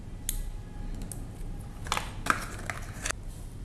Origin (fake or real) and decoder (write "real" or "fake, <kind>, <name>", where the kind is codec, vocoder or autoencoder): real